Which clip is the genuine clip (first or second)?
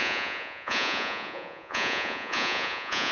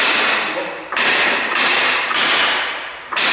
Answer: second